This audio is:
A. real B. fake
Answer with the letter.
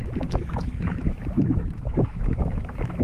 B